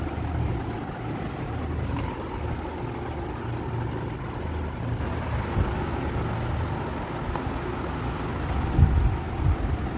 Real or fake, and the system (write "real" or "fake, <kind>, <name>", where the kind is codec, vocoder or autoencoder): real